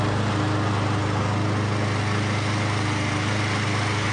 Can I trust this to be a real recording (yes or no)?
yes